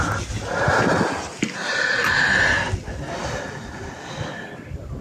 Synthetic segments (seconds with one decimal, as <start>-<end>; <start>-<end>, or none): none